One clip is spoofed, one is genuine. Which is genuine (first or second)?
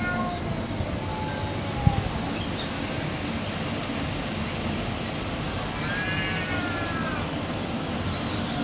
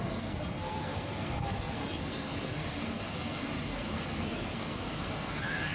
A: first